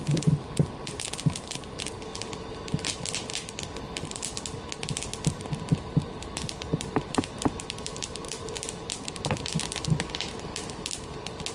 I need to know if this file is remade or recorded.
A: recorded